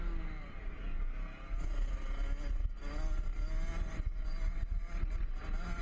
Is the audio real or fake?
real